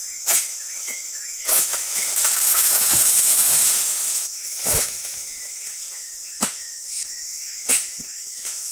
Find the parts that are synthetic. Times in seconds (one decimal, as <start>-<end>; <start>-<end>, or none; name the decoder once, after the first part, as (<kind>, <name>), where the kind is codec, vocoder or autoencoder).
0.0-8.7 (autoencoder, DAC-VAE)